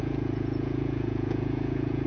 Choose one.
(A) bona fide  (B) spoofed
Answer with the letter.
B